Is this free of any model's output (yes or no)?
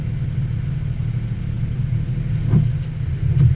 yes